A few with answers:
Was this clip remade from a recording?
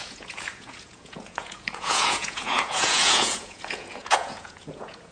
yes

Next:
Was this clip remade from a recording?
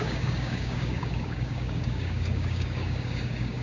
yes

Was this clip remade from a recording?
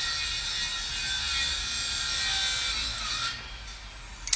no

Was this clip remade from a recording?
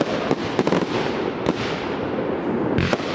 no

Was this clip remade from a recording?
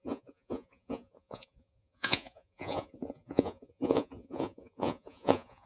yes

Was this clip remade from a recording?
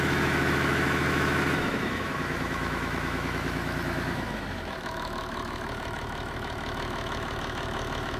yes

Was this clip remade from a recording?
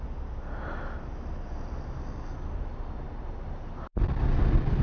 no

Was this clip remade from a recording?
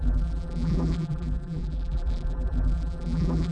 yes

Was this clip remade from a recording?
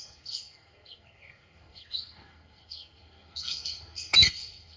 yes